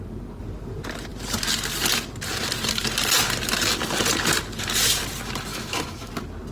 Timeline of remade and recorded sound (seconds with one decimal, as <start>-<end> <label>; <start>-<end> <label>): 0.0-5.5 recorded; 5.5-6.1 remade; 6.1-6.5 recorded